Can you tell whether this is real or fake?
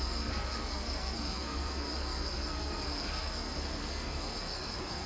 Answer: fake